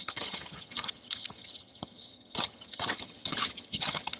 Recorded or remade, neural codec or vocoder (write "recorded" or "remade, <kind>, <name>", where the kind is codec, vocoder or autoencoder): remade, vocoder, HiFi-GAN